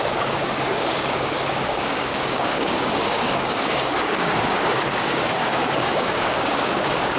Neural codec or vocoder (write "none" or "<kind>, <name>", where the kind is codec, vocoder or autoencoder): codec, DAC